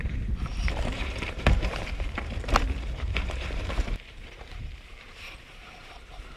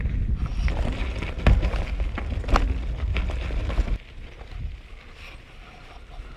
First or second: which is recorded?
second